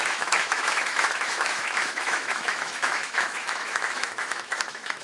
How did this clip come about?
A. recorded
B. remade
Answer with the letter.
B